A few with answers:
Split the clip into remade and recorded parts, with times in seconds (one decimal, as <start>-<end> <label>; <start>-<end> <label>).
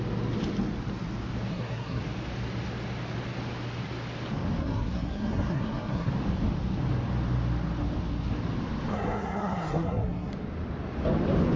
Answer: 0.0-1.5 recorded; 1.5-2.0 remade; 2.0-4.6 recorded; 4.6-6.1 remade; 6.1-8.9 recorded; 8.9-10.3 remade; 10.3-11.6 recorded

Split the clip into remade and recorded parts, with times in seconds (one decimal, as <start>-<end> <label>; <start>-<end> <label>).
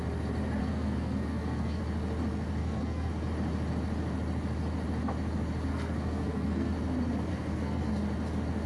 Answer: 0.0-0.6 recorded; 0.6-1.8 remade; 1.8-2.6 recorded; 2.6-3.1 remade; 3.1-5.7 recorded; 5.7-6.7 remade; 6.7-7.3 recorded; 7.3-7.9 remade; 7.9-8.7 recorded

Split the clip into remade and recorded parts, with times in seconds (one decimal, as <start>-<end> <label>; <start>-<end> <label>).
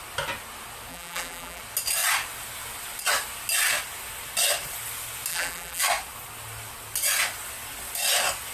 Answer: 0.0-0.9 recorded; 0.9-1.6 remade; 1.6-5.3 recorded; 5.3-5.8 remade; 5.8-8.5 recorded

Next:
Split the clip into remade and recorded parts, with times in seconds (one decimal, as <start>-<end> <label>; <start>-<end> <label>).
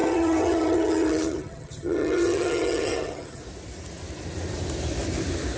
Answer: 0.0-3.4 remade; 3.4-5.6 recorded